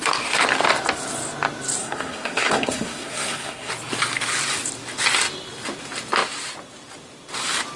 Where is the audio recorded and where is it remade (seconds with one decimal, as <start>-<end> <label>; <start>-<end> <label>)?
0.0-1.8 recorded; 1.8-3.7 remade; 3.7-7.8 recorded